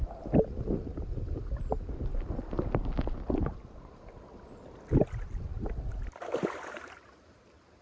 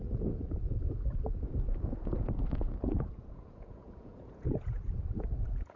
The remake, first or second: second